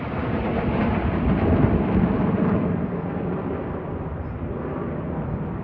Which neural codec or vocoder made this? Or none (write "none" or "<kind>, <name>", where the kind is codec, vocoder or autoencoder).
none